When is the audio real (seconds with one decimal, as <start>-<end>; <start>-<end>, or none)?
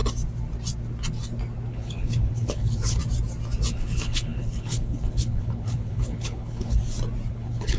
0.0-1.7; 3.0-3.7; 6.8-7.3